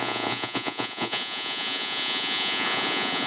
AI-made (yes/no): yes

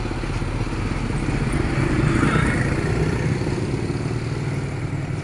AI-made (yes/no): no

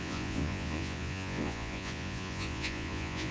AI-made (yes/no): yes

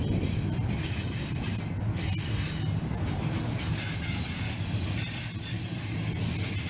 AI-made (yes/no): no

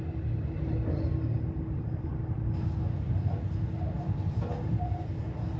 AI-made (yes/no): no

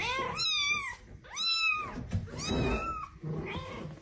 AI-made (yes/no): no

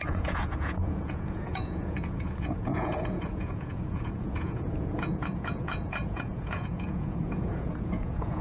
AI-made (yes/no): yes